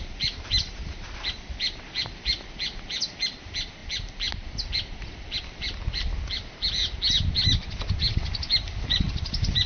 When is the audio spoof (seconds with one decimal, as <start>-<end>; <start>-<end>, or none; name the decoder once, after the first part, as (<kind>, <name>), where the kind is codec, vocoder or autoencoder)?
none